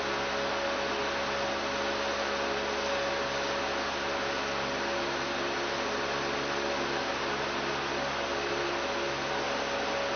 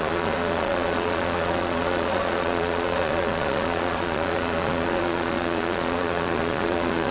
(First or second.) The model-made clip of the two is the second